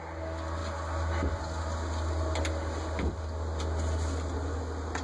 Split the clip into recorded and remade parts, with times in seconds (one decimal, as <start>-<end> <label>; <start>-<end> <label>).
0.0-5.0 recorded